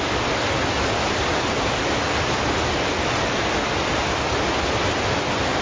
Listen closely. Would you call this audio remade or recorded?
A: remade